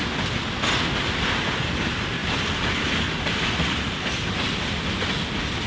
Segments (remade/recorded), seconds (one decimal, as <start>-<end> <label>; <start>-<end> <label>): 0.0-5.7 recorded